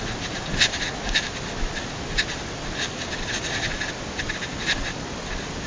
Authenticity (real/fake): real